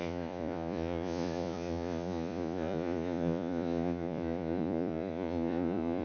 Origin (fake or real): fake